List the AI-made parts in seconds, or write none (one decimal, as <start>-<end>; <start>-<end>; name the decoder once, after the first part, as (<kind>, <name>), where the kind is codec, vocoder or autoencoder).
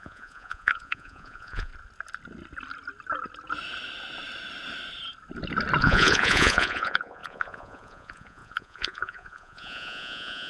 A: 0.0-1.7 (vocoder, Vocos); 5.8-10.5